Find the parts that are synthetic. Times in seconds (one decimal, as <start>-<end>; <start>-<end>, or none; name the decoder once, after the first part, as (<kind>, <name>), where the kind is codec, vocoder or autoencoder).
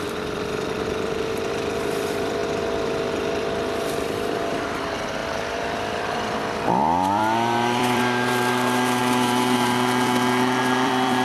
0.0-2.4 (vocoder, BigVGAN v2); 3.9-9.0; 10.6-11.2